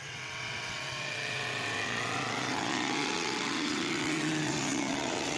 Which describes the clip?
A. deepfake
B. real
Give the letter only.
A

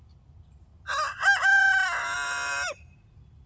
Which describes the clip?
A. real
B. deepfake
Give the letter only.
A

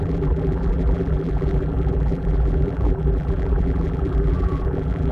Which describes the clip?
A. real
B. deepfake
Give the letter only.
B